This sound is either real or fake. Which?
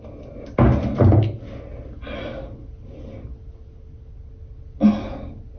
real